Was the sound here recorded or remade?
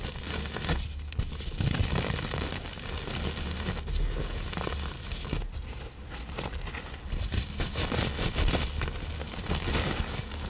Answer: recorded